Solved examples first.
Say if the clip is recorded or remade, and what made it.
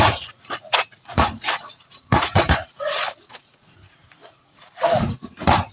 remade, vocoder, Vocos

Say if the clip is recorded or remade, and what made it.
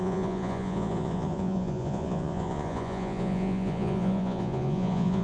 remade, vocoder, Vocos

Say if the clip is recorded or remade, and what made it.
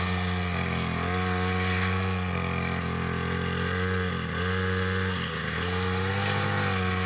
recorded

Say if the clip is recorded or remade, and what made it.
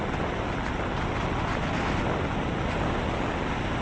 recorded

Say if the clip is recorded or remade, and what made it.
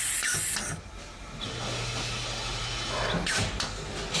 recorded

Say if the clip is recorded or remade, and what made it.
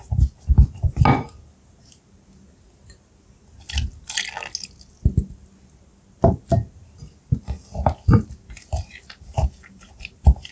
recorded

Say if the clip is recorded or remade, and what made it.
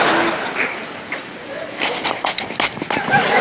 recorded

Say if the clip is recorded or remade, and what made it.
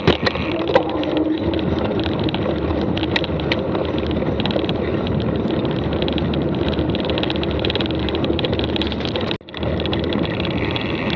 recorded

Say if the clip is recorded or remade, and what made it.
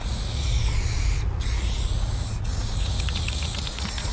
remade, vocoder, Vocos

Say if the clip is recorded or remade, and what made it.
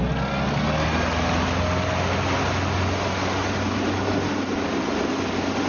recorded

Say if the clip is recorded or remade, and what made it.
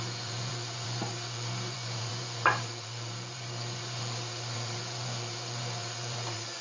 remade, vocoder, Vocos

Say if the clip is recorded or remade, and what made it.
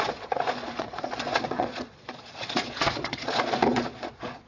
remade, vocoder, Vocos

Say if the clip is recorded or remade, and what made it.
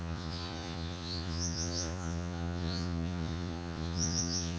remade, vocoder, Vocos